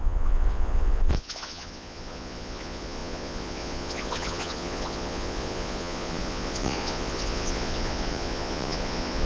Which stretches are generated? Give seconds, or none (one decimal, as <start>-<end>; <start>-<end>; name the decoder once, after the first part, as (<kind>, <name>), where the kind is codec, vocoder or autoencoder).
0.0-9.3 (vocoder, Vocos)